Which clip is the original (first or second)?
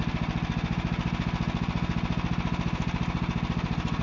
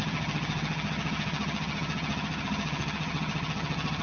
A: first